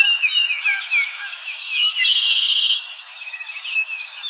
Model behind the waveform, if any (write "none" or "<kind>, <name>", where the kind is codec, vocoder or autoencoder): autoencoder, DAC-VAE